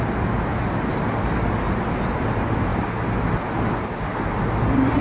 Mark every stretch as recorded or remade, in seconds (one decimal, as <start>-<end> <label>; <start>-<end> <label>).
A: 0.0-5.0 recorded